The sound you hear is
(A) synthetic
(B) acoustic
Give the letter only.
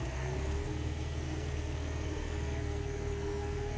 A